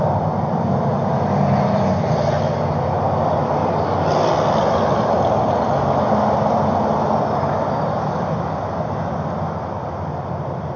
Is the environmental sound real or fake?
real